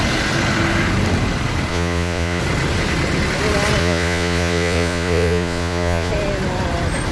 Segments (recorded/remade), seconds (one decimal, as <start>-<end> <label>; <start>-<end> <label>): 0.0-1.7 recorded; 1.7-2.4 remade; 2.4-3.8 recorded; 3.8-6.1 remade; 6.1-7.1 recorded